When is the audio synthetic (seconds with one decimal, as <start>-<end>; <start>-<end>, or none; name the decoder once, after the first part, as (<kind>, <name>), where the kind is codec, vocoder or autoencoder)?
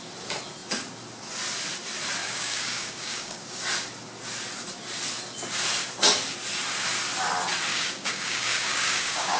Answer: 2.2-3.6 (codec, DAC); 7.7-9.4